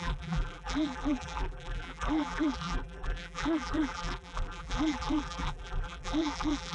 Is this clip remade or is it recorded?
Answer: remade